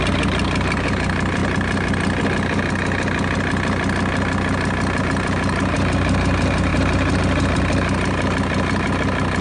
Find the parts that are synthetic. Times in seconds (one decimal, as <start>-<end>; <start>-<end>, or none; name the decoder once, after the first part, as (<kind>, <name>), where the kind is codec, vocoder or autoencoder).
0.0-1.4 (vocoder, BigVGAN v2); 5.0-9.4